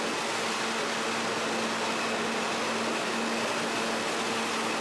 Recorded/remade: recorded